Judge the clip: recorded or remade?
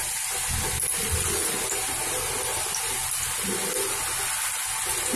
recorded